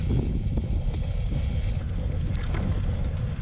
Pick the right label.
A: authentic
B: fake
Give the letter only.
A